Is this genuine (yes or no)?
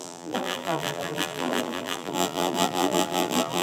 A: no